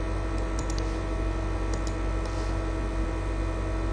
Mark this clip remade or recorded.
recorded